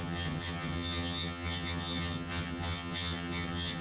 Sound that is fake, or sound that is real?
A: fake